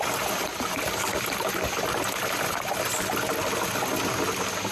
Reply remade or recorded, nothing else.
recorded